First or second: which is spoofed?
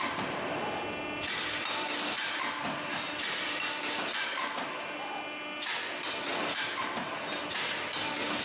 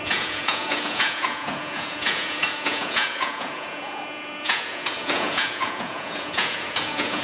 second